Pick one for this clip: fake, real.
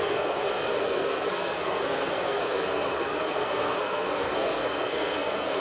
fake